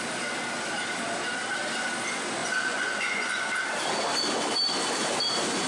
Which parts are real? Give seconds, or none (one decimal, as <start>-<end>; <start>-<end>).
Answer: 0.0-2.4; 3.5-5.7